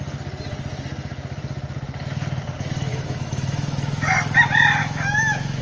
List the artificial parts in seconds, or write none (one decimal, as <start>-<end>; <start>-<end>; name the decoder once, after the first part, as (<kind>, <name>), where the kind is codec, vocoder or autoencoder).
2.9-4.1 (autoencoder, DAC-VAE); 4.8-5.6